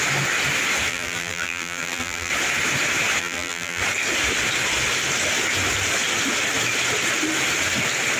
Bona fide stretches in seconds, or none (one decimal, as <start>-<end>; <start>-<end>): 0.0-0.9; 2.3-3.2; 3.8-8.2